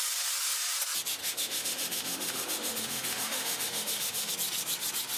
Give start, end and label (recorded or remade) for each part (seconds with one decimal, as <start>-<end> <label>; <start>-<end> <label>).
0.0-1.2 recorded; 1.2-4.3 remade; 4.3-5.2 recorded

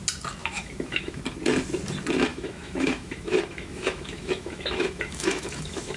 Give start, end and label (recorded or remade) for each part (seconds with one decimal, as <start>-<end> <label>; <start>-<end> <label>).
0.0-0.4 recorded; 0.4-1.2 remade; 1.2-2.3 recorded; 2.3-6.0 remade

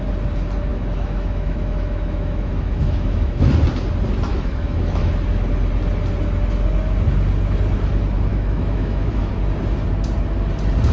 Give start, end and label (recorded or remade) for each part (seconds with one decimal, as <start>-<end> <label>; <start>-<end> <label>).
0.0-0.7 recorded; 0.7-3.5 remade; 3.5-4.3 recorded; 4.3-5.1 remade; 5.1-8.3 recorded; 8.3-9.3 remade; 9.3-10.9 recorded

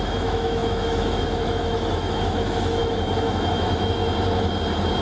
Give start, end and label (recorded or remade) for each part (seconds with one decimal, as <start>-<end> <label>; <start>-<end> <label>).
0.0-4.0 remade; 4.0-5.0 recorded

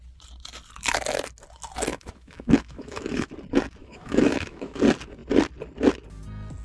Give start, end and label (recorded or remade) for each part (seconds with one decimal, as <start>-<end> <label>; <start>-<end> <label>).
0.0-1.9 recorded; 1.9-3.3 remade; 3.3-3.8 recorded; 3.8-4.8 remade; 4.8-6.6 recorded

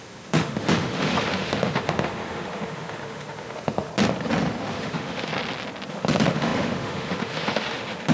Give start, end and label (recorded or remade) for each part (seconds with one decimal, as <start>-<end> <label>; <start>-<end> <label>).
0.0-3.9 remade; 3.9-4.7 recorded; 4.7-5.3 remade; 5.3-5.9 recorded; 5.9-8.1 remade

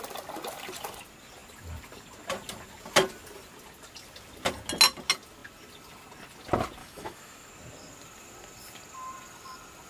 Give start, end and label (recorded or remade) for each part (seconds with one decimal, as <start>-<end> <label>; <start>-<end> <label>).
0.0-6.8 recorded; 6.8-7.5 remade; 7.5-9.9 recorded